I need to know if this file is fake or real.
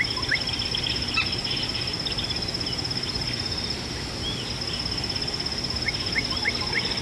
real